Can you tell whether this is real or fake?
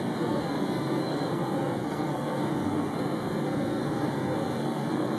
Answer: fake